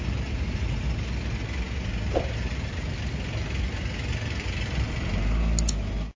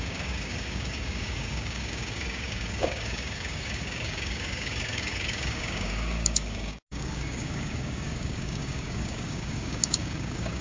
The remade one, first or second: second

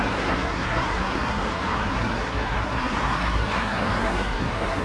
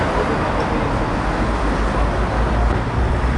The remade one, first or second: first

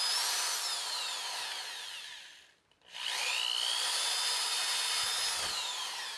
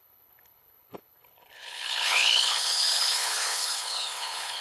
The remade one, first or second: second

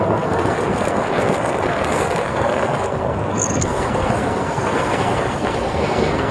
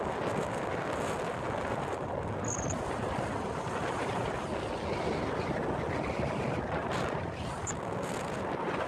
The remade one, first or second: first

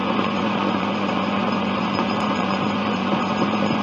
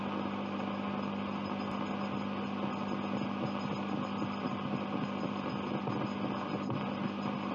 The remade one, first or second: first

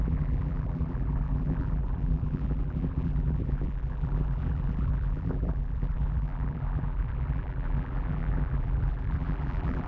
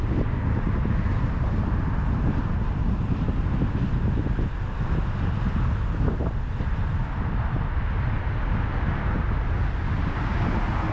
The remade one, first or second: first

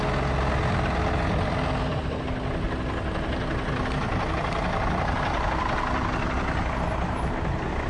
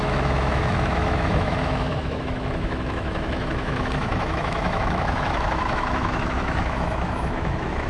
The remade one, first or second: second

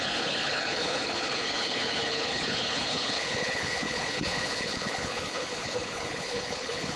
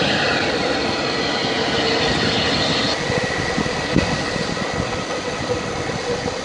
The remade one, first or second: first